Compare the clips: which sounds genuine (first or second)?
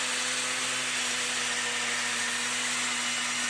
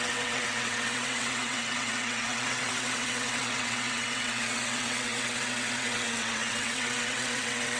first